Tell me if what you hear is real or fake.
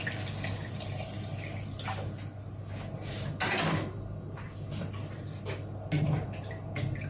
real